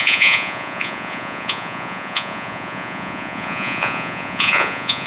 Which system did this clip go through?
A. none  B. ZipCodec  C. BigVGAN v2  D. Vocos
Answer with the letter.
D